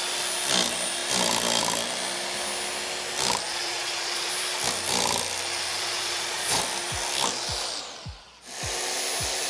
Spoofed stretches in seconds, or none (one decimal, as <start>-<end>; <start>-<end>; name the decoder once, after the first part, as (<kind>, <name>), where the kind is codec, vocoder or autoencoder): 3.5-4.3 (vocoder, Vocos); 5.7-6.6